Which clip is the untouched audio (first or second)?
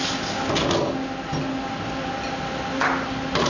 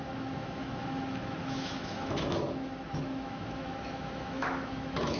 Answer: first